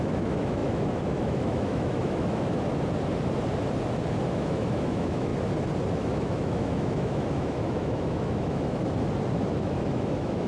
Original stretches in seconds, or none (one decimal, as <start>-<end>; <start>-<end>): 2.7-4.3; 5.3-5.9; 8.8-9.5